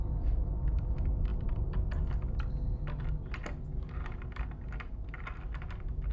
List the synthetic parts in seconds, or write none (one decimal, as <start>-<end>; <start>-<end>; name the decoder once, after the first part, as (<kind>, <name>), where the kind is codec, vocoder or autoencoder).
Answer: none